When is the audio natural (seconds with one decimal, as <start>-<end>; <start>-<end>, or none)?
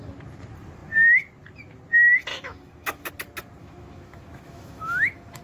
0.0-2.3; 3.1-3.6